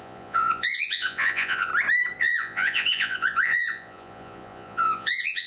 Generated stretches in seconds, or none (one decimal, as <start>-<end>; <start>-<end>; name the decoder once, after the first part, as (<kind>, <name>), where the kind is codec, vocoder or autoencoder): 0.0-1.7 (vocoder, Vocos); 2.2-5.5